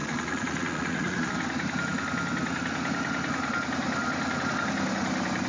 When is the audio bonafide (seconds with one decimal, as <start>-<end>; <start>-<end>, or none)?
1.3-5.5